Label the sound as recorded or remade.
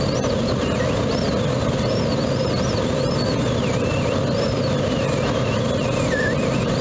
recorded